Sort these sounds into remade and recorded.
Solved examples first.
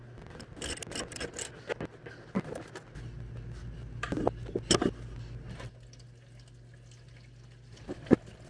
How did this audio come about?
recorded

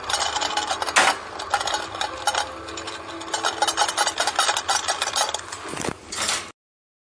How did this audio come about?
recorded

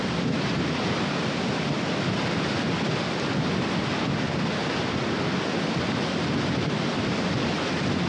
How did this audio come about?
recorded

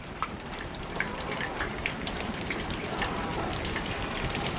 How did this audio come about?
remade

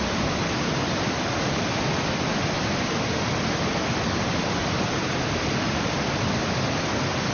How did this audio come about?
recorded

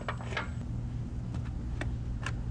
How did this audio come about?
recorded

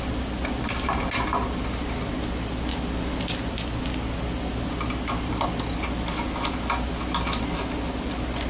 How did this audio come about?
recorded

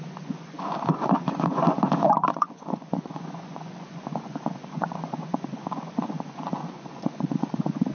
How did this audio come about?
remade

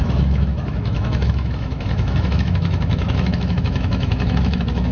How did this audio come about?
remade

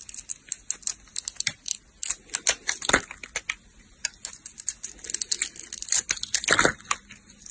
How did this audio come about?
recorded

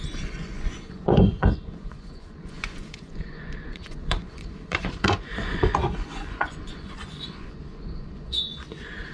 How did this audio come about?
remade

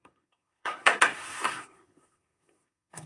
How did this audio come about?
remade